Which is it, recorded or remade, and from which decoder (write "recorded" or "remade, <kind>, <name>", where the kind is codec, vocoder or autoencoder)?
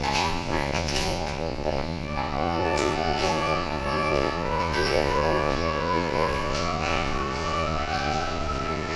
remade, vocoder, Vocos